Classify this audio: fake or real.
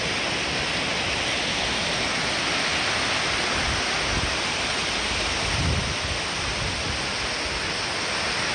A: real